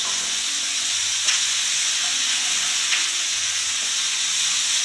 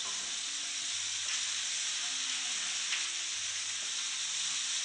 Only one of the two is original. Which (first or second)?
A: second